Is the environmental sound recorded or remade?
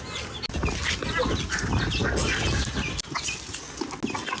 recorded